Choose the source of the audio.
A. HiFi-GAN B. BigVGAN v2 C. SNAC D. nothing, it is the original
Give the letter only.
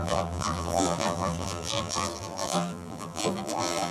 B